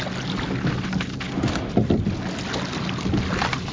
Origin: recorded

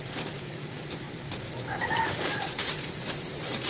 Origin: remade